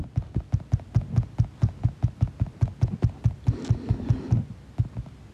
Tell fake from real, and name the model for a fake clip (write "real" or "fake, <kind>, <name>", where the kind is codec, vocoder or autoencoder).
real